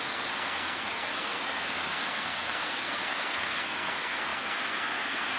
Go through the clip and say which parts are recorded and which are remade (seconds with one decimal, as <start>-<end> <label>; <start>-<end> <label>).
0.0-5.4 remade